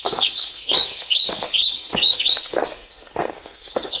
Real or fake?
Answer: fake